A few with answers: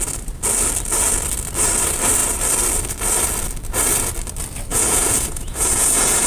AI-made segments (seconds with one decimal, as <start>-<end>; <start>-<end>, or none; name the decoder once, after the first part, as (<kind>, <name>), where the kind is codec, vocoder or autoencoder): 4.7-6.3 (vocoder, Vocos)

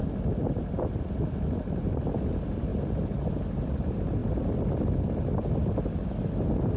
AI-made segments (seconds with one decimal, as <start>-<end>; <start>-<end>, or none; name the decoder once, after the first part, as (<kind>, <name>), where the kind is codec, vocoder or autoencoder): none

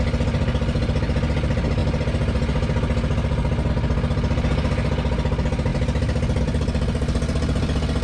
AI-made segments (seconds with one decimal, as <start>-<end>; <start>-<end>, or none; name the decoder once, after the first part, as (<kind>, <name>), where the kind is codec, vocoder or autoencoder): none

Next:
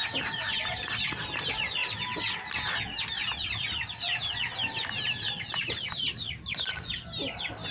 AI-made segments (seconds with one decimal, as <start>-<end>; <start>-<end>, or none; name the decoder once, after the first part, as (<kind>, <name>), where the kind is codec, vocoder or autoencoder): none

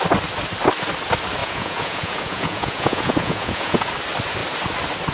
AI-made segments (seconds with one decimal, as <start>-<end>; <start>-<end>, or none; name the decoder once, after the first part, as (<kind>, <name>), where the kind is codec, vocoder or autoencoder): 1.4-3.9 (vocoder, Vocos)